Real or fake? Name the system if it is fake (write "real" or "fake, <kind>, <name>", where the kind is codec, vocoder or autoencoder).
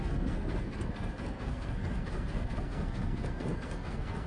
fake, codec, SNAC